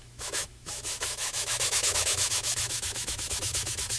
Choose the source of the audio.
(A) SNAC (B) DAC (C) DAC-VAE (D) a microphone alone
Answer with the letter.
C